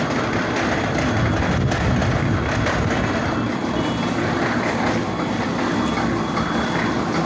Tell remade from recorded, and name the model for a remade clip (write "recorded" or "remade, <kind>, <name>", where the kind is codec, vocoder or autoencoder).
recorded